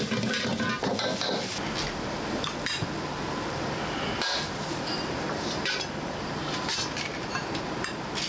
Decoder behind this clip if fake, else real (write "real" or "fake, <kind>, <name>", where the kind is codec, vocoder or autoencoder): real